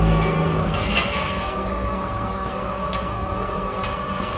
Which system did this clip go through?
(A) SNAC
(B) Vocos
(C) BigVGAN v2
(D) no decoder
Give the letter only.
A